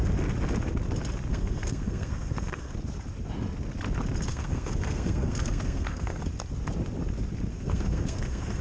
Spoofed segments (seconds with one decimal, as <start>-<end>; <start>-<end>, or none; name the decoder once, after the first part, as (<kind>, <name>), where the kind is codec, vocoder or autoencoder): 1.3-2.7 (codec, SNAC); 4.3-6.2; 7.5-8.6